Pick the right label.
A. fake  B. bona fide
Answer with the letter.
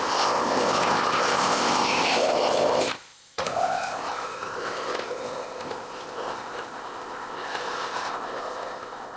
A